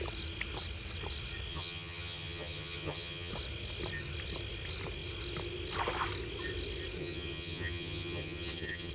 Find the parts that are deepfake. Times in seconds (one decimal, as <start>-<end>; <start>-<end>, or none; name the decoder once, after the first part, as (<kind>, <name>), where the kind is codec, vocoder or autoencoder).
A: 1.5-3.3 (vocoder, HiFi-GAN); 7.0-8.9